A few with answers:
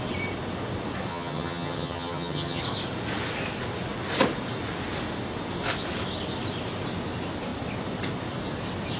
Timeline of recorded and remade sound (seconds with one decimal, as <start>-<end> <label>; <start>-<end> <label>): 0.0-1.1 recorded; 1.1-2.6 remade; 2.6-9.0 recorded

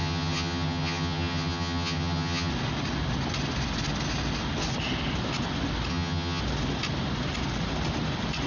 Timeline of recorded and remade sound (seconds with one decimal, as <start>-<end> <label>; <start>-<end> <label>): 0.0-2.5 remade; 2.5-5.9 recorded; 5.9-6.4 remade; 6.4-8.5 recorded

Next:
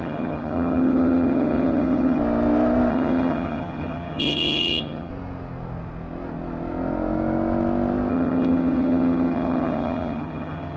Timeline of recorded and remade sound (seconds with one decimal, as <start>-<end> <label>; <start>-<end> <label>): 0.0-2.2 remade; 2.2-2.9 recorded; 2.9-5.1 remade; 5.1-8.1 recorded; 8.1-10.8 remade

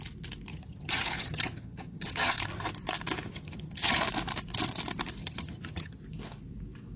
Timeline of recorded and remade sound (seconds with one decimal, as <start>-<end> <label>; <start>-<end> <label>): 0.0-0.5 recorded; 0.5-2.4 remade; 2.4-3.3 recorded; 3.3-4.0 remade; 4.0-5.2 recorded; 5.2-6.0 remade; 6.0-7.0 recorded

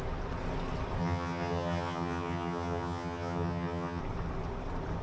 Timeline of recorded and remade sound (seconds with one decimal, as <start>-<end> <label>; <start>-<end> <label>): 0.0-1.0 recorded; 1.0-4.0 remade; 4.0-5.0 recorded

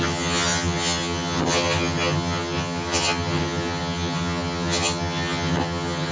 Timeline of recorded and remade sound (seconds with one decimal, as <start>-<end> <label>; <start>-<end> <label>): 0.0-6.1 remade